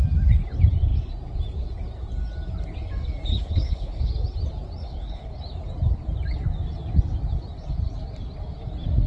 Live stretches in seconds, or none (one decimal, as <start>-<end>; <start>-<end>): 0.0-3.3; 4.1-4.8; 5.4-9.1